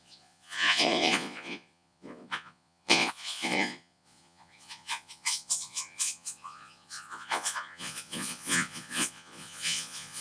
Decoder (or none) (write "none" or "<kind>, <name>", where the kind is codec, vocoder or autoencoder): vocoder, Vocos